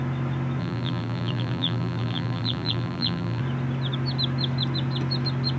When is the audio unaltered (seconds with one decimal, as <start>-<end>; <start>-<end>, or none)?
0.0-0.6; 3.4-5.6